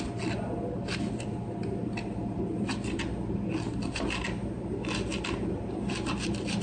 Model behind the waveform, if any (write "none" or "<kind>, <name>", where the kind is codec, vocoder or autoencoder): none